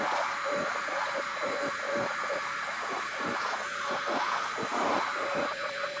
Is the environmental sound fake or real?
fake